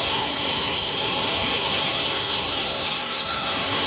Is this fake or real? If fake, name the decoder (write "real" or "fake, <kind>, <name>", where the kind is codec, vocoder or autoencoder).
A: fake, codec, SNAC